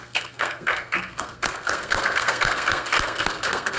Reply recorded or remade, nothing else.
remade